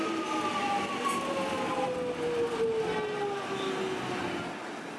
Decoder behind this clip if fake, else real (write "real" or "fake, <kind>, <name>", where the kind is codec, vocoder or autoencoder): real